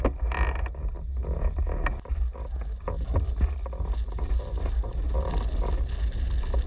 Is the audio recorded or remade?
recorded